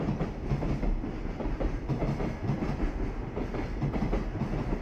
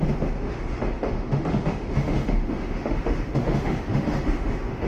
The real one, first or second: first